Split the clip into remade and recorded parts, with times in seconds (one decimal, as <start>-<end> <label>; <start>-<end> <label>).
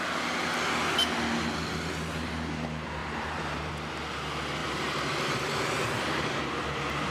0.0-3.0 recorded; 3.0-3.7 remade; 3.7-4.6 recorded; 4.6-5.2 remade; 5.2-7.1 recorded